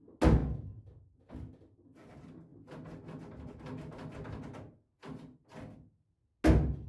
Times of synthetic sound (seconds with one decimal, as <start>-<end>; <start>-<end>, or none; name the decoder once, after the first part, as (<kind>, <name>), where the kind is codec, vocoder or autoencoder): none